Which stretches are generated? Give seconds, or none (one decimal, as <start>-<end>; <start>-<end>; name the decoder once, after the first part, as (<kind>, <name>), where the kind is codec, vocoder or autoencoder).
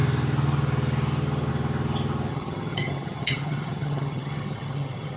2.3-5.2 (vocoder, HiFi-GAN)